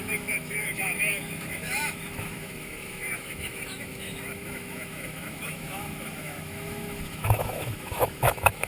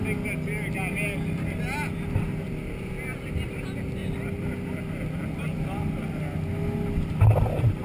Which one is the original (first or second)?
second